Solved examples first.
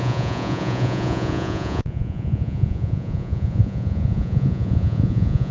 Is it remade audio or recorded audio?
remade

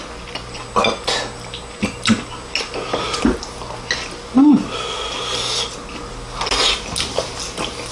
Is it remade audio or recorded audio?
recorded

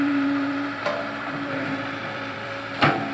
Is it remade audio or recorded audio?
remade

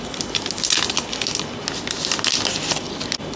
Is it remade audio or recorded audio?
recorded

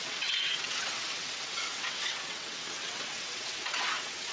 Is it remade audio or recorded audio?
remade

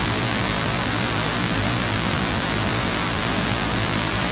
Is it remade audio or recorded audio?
remade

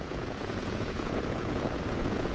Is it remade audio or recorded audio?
remade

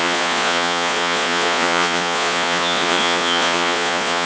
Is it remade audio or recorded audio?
remade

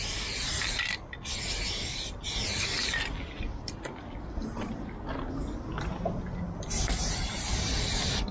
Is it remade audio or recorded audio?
recorded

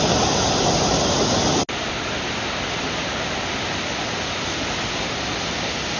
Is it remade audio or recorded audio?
recorded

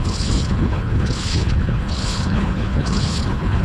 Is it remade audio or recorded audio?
remade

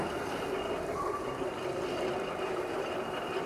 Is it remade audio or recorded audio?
recorded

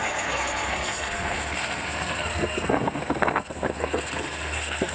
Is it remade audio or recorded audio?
remade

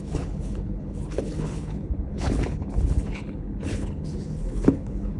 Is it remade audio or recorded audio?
remade